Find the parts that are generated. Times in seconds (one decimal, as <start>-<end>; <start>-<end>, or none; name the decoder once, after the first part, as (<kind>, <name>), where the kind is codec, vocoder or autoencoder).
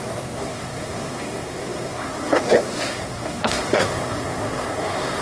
0.0-5.2 (codec, SNAC)